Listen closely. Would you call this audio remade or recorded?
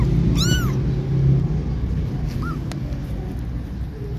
recorded